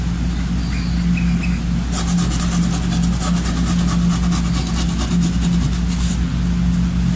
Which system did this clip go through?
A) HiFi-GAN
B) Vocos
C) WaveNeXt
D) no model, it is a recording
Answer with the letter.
D